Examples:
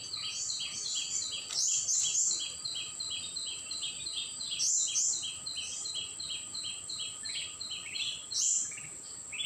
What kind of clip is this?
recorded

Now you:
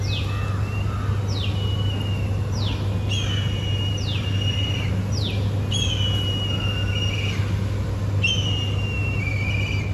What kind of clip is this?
recorded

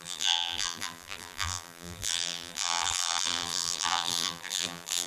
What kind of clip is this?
remade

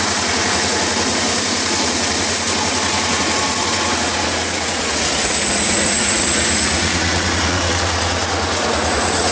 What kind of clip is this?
remade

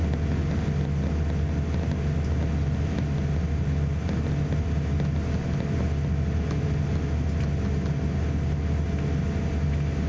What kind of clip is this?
recorded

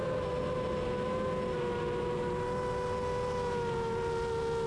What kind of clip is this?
recorded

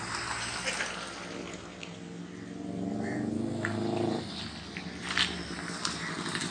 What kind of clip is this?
recorded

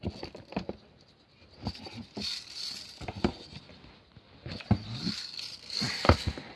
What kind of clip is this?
recorded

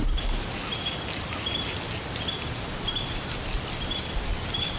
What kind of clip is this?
recorded